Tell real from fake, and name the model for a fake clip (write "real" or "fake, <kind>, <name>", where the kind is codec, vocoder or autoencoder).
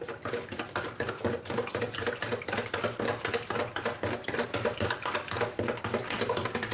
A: real